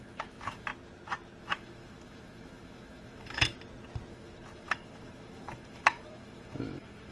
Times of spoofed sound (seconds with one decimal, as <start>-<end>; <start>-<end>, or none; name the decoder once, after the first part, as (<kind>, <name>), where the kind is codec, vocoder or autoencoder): 0.0-0.7 (autoencoder, DAC-VAE); 1.4-3.5; 4.1-7.1